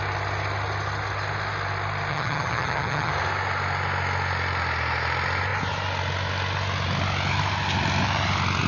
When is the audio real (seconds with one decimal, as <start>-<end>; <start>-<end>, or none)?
0.0-2.1; 3.1-8.7